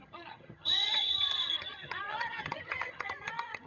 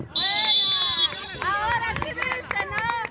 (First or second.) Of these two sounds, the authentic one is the second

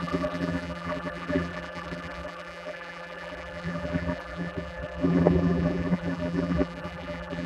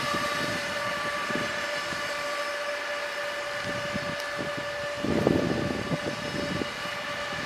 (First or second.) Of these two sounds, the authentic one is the second